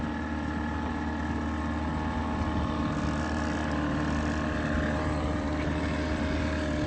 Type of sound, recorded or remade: recorded